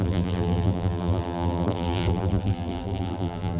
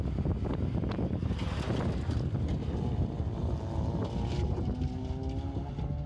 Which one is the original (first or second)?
second